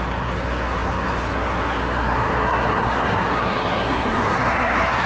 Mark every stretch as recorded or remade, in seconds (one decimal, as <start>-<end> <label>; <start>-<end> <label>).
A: 0.0-5.1 remade